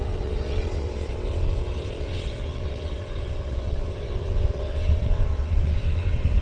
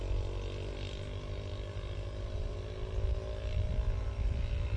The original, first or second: second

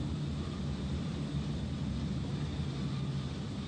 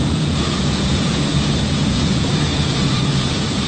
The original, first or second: first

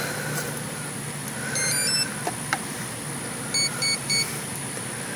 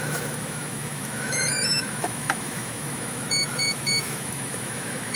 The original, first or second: first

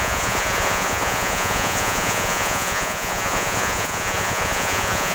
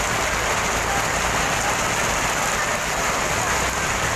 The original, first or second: second